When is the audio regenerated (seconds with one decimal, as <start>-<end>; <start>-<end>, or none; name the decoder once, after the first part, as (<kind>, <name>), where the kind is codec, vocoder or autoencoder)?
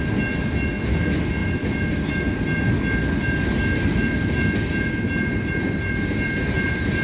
none